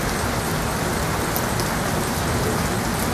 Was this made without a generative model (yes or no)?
yes